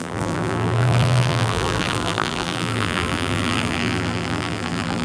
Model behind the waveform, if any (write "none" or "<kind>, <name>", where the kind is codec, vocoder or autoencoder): vocoder, BigVGAN v2